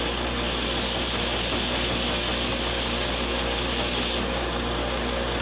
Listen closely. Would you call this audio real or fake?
real